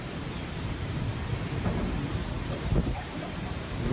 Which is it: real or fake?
fake